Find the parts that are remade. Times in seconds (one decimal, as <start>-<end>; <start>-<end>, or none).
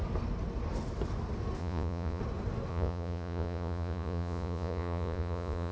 1.6-2.2; 2.7-5.7